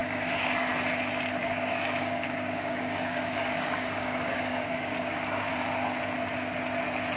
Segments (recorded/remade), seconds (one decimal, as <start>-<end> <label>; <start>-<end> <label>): 0.0-0.7 remade; 0.7-1.4 recorded; 1.4-5.5 remade; 5.5-7.2 recorded